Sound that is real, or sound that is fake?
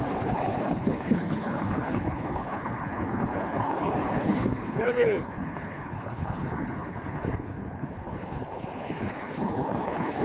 fake